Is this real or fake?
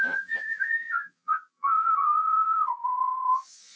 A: fake